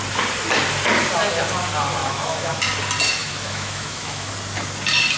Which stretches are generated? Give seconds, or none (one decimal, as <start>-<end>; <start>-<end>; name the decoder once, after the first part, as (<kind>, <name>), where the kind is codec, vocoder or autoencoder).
2.0-2.6 (autoencoder, DAC-VAE); 3.2-4.3